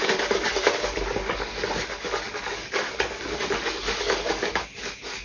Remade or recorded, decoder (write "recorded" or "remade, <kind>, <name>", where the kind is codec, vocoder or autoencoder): remade, codec, DAC